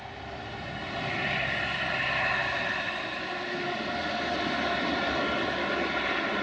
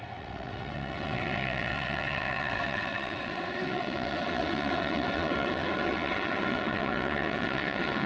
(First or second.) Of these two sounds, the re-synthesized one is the second